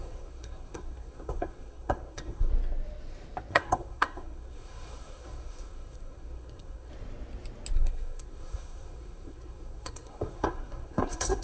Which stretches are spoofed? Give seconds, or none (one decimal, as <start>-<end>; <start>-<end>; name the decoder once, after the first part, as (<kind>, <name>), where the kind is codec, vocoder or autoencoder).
0.0-2.5 (codec, SNAC); 3.5-6.9; 7.7-11.4